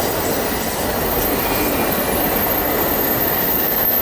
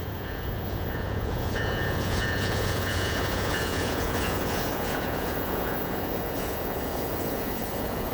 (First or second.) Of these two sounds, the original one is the first